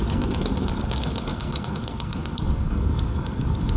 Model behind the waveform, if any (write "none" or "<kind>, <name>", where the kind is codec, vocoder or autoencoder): codec, SNAC